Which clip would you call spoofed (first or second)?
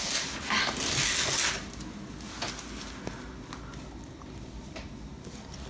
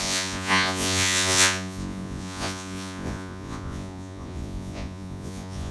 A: second